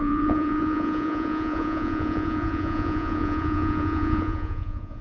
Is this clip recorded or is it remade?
remade